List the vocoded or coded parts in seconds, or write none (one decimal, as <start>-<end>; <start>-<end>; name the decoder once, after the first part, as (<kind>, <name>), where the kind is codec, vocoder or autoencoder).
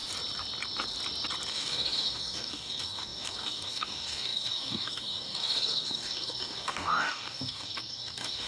1.5-8.5 (codec, DAC)